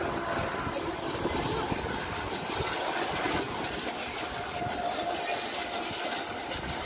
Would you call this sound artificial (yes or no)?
no